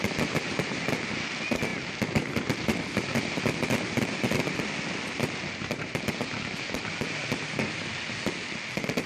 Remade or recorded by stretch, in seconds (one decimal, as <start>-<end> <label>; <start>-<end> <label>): 0.0-9.1 recorded